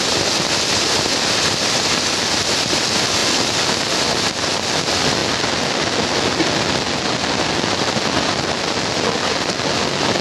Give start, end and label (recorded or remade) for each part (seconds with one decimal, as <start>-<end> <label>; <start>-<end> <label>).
0.0-10.2 recorded